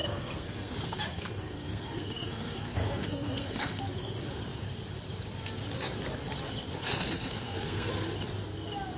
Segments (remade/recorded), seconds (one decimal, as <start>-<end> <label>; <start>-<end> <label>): 0.0-3.8 remade; 3.8-6.8 recorded; 6.8-7.9 remade; 7.9-9.0 recorded